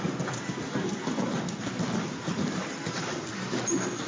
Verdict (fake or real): real